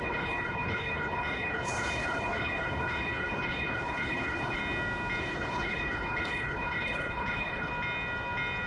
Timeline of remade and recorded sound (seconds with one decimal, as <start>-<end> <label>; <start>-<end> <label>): 0.0-4.6 remade; 4.6-5.2 recorded; 5.2-7.7 remade; 7.7-8.7 recorded